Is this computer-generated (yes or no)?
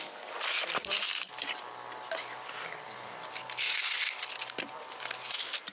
no